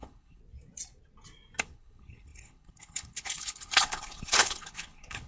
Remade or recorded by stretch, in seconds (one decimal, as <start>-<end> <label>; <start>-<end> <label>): 0.0-0.4 remade; 0.4-1.6 recorded; 1.6-5.3 remade